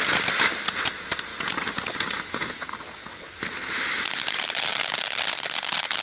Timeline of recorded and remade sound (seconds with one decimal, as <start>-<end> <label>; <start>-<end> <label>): 0.0-6.0 recorded